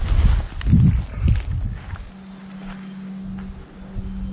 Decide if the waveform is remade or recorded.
recorded